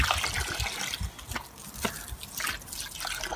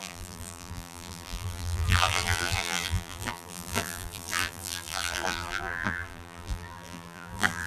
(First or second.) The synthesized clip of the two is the second